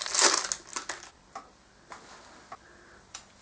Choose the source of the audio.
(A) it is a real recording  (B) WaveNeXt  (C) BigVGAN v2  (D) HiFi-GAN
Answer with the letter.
A